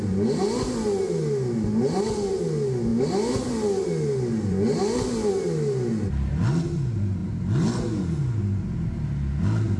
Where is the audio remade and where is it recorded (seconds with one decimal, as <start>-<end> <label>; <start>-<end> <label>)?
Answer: 0.0-9.8 recorded